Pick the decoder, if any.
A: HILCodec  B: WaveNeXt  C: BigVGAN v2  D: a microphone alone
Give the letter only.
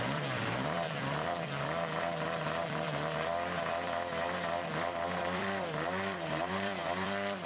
C